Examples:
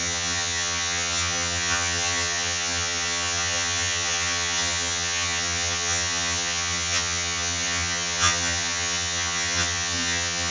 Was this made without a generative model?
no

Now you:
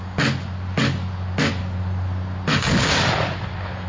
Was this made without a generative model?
yes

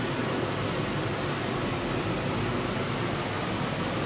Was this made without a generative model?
yes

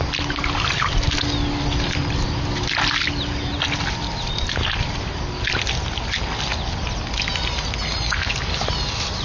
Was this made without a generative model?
yes